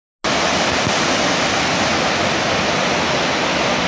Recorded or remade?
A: recorded